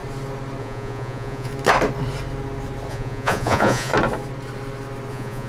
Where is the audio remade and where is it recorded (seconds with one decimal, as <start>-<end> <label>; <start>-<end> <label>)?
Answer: 0.0-0.6 recorded; 0.6-1.5 remade; 1.5-2.9 recorded; 2.9-3.9 remade; 3.9-5.1 recorded; 5.1-5.5 remade